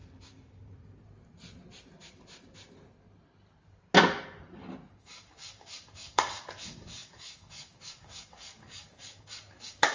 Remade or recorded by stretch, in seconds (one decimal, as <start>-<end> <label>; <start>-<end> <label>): 0.0-5.0 recorded; 5.0-9.9 remade